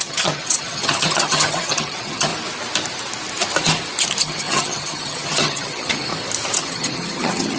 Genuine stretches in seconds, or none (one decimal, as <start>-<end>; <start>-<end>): 2.3-4.2; 6.1-6.6